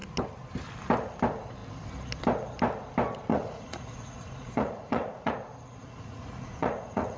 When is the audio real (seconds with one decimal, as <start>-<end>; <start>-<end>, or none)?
0.0-3.3; 5.3-5.8